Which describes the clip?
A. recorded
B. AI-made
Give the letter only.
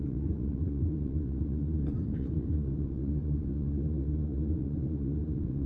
B